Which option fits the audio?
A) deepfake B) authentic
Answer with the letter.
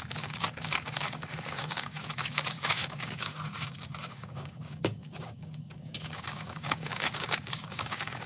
A